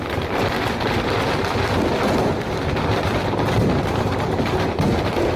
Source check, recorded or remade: recorded